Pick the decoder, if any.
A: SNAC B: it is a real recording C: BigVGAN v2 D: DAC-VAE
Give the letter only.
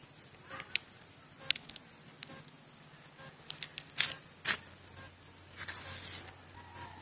B